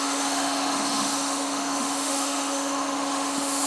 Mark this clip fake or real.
fake